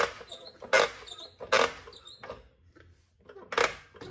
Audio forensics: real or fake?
real